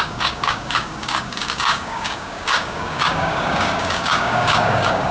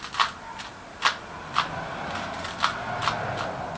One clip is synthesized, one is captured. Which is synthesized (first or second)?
first